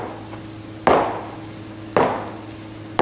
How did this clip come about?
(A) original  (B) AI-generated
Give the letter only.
A